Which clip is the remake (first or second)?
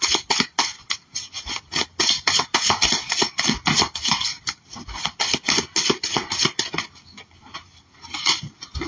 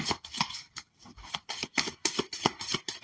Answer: second